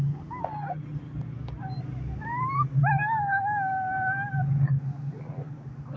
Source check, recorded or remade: recorded